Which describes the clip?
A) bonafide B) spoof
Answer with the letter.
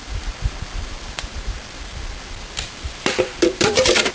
B